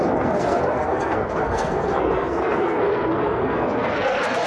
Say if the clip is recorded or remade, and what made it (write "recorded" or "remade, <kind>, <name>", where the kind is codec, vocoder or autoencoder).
remade, codec, SNAC